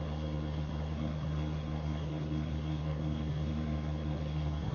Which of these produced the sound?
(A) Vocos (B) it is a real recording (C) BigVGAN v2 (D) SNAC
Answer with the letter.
D